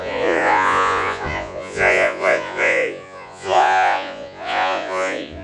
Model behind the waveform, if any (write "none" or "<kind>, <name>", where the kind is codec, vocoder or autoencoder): vocoder, Vocos